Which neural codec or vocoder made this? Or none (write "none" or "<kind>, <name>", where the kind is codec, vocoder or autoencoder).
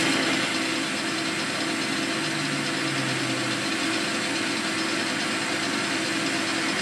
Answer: none